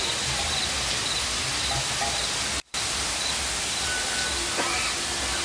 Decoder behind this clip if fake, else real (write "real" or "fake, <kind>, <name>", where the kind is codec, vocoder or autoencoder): real